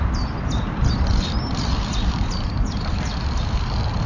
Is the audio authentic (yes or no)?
no